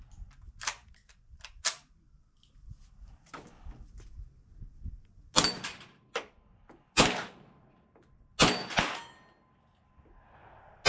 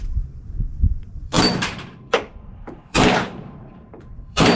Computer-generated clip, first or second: second